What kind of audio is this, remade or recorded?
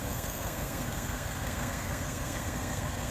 remade